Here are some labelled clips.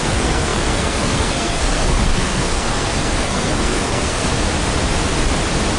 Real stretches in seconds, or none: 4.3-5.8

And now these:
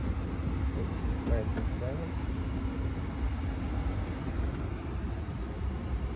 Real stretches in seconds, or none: 0.0-6.2

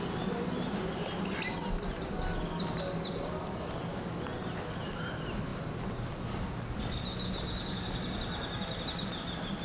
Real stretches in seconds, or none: 0.0-9.6

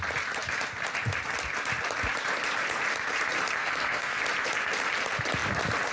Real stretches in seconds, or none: 0.0-3.6; 4.2-5.9

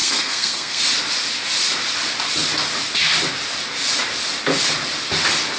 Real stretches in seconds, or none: 0.8-5.6

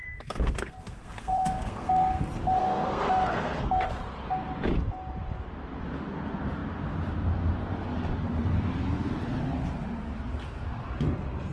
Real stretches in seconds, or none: 2.2-2.6; 3.9-11.5

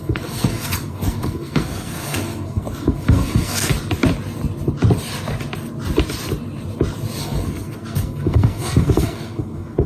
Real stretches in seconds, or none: 3.7-7.2